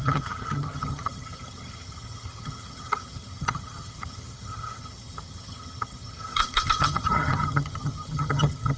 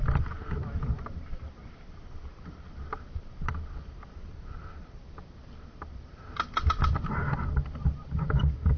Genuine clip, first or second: second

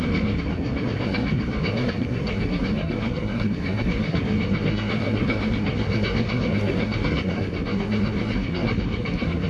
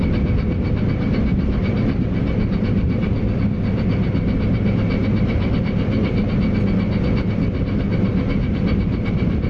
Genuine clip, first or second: second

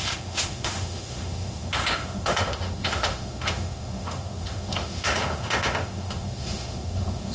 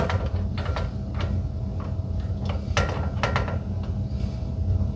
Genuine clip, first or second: second